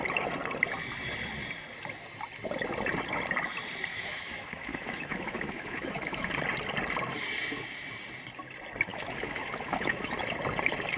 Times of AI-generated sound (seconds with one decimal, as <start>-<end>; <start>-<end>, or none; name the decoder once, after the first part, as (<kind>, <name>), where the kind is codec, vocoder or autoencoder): 3.9-6.3 (autoencoder, DAC-VAE); 8.9-10.2